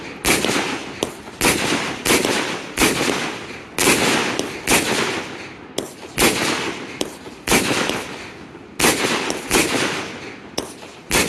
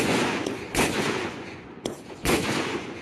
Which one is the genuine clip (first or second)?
first